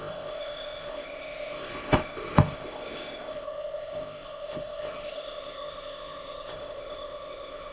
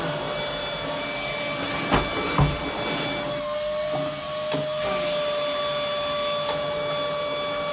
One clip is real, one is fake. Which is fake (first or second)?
first